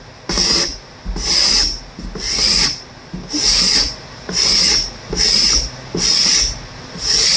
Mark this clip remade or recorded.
recorded